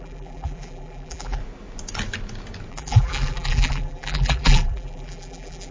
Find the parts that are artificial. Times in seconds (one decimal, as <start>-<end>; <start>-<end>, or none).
0.0-1.4; 2.7-5.7